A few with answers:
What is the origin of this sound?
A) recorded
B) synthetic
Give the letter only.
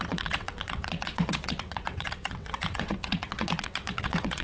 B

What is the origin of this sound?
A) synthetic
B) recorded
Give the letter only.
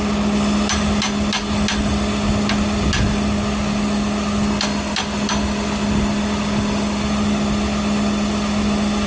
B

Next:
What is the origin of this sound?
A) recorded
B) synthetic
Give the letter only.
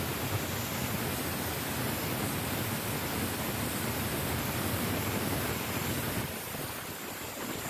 A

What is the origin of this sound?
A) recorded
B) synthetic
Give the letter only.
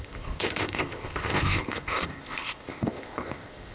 B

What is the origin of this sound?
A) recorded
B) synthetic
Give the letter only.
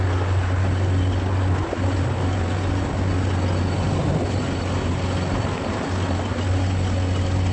A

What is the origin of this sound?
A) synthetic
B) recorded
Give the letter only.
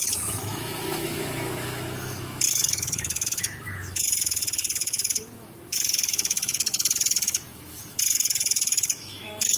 A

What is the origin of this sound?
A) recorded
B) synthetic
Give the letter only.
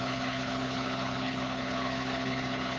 B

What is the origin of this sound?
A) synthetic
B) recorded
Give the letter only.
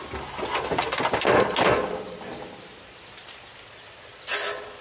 B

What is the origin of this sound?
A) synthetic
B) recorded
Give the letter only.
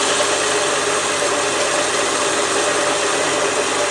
B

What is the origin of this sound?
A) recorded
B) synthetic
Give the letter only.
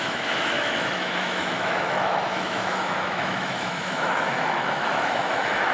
B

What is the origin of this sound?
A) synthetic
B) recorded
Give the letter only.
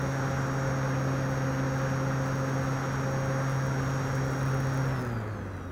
B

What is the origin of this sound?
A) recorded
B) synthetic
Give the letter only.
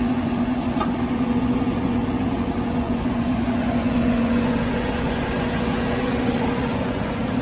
B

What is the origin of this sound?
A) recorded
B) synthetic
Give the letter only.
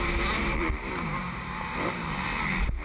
A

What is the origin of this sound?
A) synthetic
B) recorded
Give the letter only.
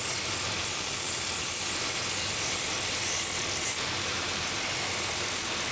A